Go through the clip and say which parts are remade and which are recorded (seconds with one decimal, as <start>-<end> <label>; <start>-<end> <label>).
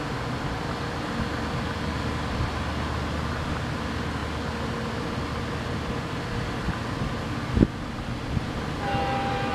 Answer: 0.0-9.5 recorded